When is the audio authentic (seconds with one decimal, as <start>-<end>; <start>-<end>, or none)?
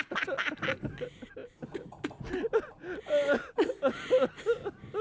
0.0-5.0